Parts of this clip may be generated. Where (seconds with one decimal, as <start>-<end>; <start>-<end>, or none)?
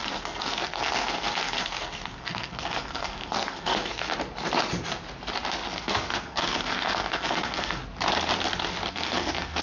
0.0-4.1; 5.7-7.8; 8.9-9.6